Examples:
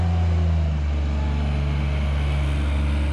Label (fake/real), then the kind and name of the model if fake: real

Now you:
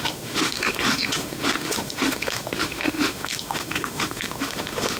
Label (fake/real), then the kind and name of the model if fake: fake, autoencoder, DAC-VAE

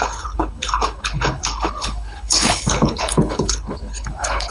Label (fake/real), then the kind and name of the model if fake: fake, codec, HILCodec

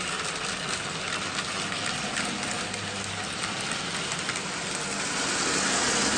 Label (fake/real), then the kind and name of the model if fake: real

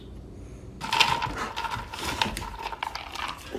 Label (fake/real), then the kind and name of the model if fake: real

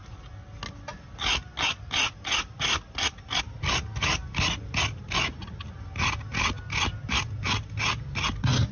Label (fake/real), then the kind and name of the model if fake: real